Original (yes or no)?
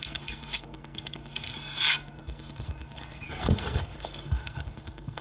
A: no